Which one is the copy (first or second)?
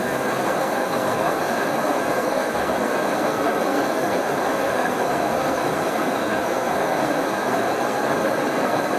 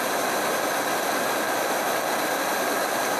first